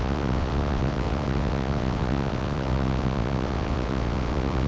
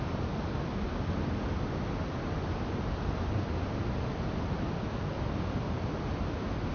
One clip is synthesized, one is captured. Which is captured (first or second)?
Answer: second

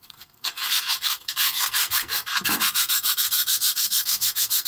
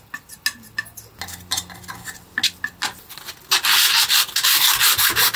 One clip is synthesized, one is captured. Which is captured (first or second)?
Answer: second